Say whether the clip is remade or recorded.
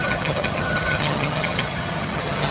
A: remade